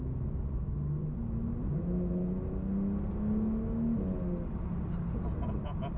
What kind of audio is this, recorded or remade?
recorded